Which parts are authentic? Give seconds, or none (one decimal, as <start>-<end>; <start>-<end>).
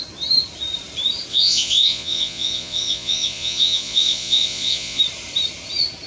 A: 0.0-1.3; 5.0-6.1